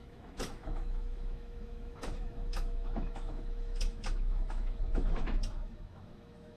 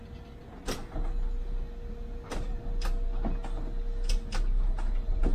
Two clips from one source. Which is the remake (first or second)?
first